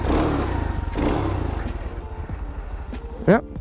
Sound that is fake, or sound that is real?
real